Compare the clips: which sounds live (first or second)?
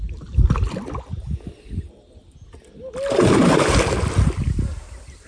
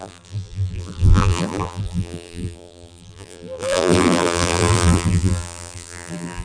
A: first